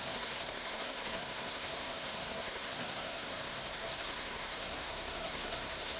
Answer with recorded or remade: remade